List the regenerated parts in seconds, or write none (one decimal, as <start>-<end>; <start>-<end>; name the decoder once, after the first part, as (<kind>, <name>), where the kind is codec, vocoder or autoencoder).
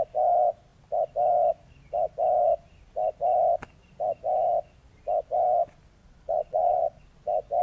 6.0-7.0 (vocoder, Vocos)